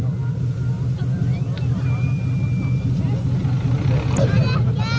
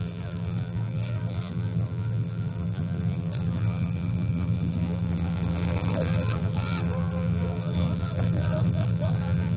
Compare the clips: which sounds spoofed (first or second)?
second